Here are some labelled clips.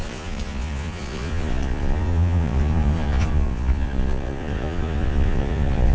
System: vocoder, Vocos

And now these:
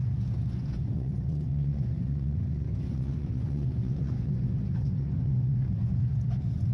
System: vocoder, Vocos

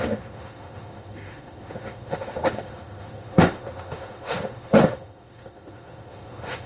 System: autoencoder, DAC-VAE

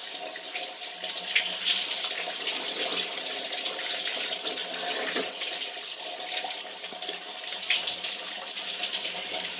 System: none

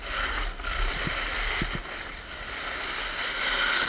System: none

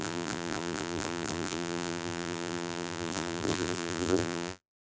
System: vocoder, BigVGAN v2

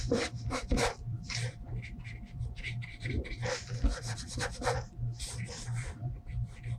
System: vocoder, BigVGAN v2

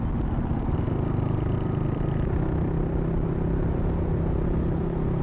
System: none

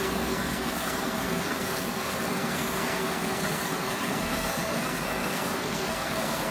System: codec, SNAC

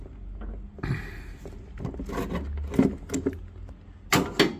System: none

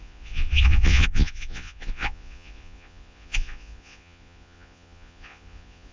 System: vocoder, Vocos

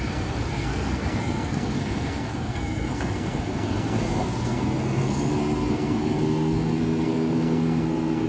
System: codec, SNAC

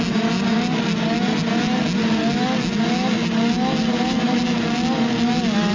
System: none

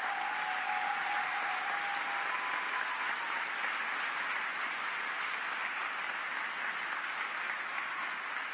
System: none